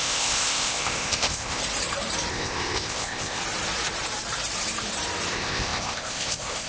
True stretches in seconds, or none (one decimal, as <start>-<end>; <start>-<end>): 1.6-2.3; 3.4-5.3